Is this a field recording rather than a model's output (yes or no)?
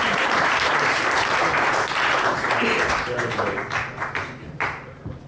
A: no